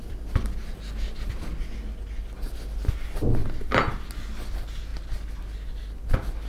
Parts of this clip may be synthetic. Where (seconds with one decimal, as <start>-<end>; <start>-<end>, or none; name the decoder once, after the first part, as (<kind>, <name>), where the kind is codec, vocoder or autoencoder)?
none